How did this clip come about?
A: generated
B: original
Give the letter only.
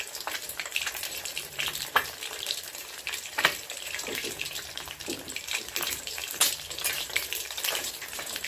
A